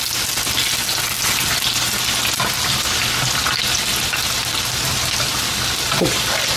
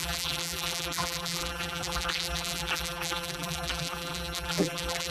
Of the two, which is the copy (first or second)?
second